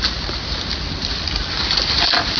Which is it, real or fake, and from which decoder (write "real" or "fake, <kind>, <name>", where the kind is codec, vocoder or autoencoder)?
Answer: real